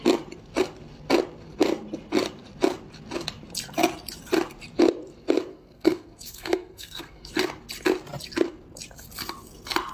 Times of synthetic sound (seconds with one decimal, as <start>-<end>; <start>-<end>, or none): 5.5-7.3

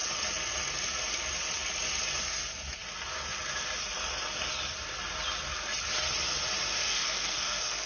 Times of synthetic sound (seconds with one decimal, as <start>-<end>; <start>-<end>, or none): 6.8-7.9

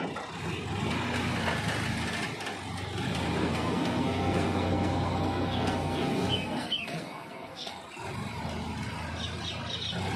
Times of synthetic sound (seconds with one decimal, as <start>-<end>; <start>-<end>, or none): 3.4-7.8